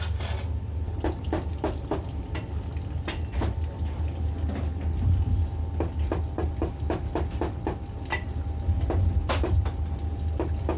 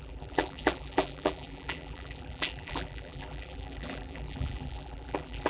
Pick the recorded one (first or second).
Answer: first